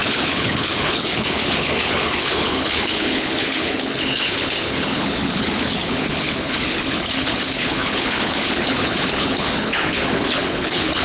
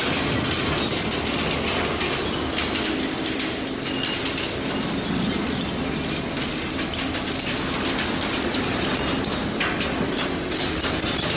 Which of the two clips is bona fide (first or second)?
second